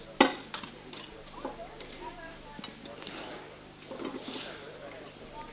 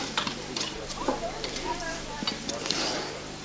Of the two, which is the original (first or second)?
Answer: first